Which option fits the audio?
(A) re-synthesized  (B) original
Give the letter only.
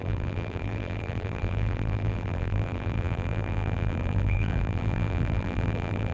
A